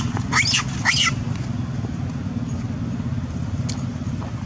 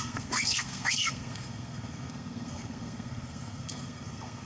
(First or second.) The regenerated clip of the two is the second